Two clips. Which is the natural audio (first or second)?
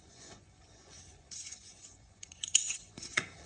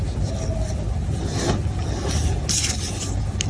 second